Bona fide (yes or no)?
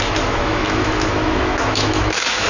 no